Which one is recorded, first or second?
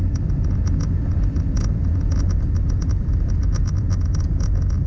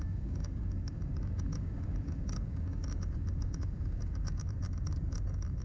first